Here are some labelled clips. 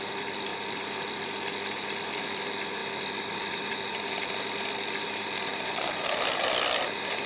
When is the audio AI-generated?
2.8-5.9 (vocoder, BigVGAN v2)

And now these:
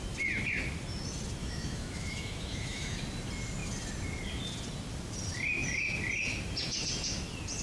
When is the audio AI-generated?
1.4-3.0 (autoencoder, DAC-VAE)

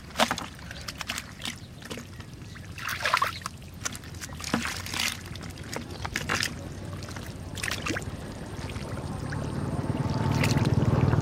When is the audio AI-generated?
0.0-6.3 (vocoder, BigVGAN v2); 7.1-7.5; 9.2-11.2